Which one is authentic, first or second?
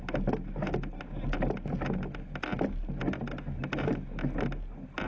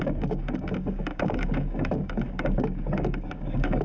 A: first